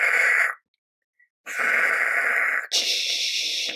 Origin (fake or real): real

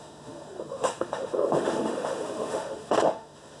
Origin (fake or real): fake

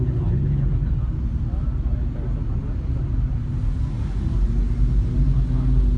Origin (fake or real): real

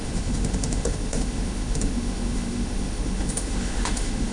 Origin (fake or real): fake